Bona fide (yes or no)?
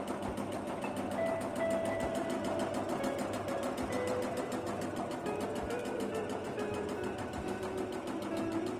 yes